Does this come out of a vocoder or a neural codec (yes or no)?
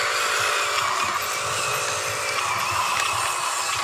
no